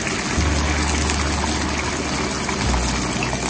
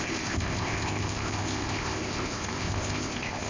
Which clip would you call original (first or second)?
first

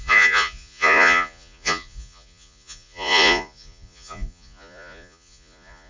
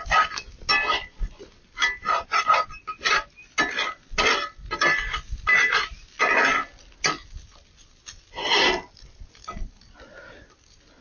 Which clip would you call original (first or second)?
second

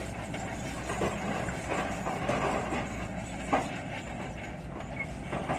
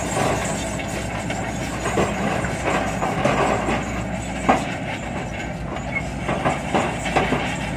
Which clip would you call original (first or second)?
second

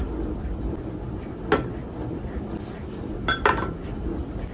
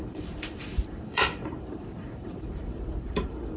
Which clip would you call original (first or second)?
first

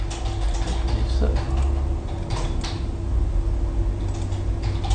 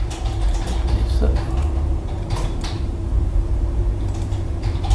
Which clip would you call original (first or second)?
first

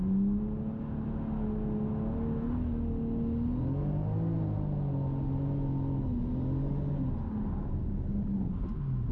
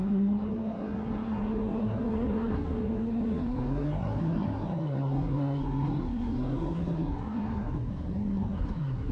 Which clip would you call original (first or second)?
first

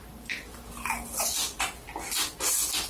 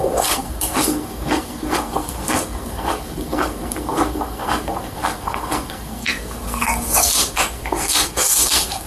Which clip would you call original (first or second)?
first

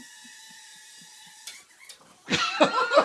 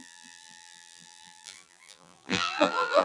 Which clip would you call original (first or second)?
first